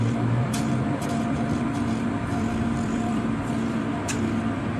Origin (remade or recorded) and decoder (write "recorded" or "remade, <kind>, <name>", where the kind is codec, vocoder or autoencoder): remade, vocoder, BigVGAN v2